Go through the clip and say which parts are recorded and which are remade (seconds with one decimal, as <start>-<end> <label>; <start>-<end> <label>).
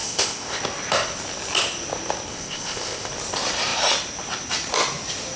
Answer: 0.0-0.6 remade; 0.6-2.3 recorded; 2.3-3.1 remade; 3.1-5.4 recorded